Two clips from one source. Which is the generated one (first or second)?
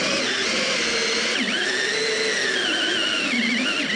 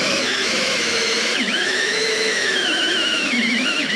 second